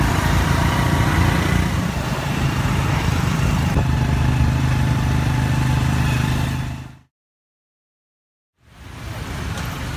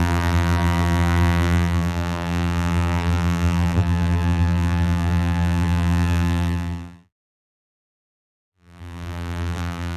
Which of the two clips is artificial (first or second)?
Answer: second